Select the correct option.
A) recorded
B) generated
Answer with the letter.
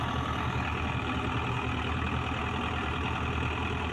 A